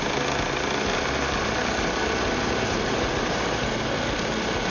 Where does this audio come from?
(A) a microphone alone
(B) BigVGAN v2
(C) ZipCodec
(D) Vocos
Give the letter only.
A